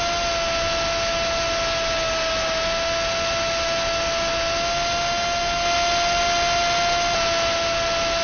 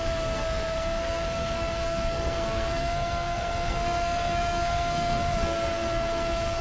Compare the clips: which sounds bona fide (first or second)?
first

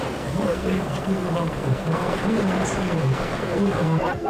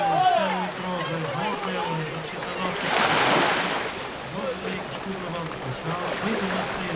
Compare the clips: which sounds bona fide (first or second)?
second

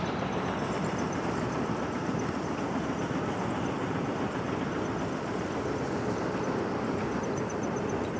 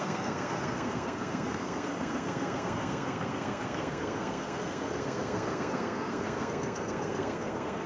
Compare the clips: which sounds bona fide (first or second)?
first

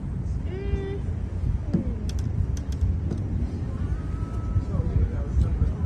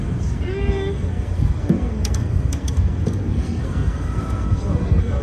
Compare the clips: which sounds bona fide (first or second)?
first